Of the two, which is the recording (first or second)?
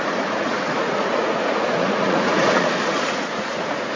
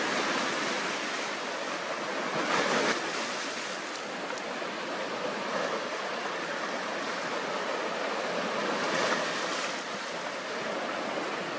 second